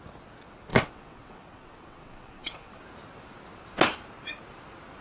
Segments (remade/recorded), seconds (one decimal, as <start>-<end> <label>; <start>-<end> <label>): 0.0-0.7 recorded; 0.7-2.8 remade; 2.8-5.0 recorded